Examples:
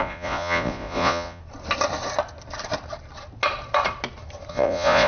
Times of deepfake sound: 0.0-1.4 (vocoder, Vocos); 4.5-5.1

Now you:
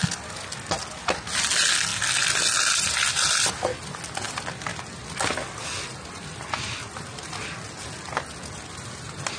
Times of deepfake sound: none

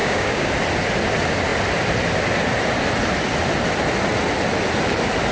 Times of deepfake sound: 0.0-0.5 (codec, DAC)

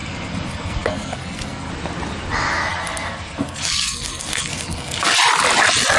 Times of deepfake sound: 0.0-1.7 (codec, SNAC); 2.7-5.0

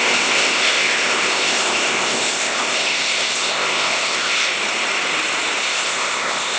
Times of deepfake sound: 0.0-4.5 (codec, ZipCodec); 5.6-6.6